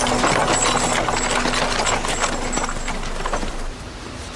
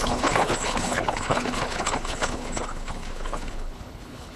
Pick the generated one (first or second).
second